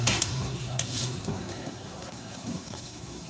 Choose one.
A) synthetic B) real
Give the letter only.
A